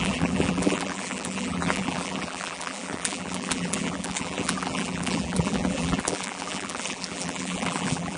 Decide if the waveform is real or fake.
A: fake